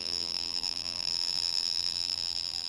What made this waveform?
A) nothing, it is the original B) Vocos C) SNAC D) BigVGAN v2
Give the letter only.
D